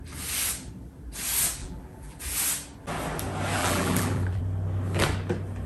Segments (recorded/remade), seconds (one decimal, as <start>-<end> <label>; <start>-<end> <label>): 0.0-1.6 recorded; 1.6-2.2 remade; 2.2-3.6 recorded; 3.6-4.4 remade; 4.4-5.7 recorded